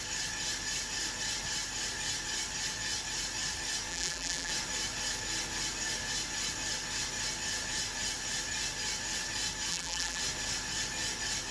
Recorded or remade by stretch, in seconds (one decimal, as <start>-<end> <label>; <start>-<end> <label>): 0.0-3.9 recorded; 3.9-4.5 remade; 4.5-9.7 recorded; 9.7-10.2 remade; 10.2-11.5 recorded